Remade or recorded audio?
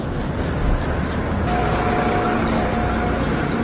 recorded